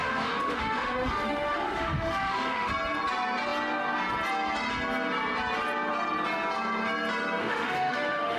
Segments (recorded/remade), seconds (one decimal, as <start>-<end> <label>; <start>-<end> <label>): 0.0-2.7 remade; 2.7-7.4 recorded; 7.4-8.4 remade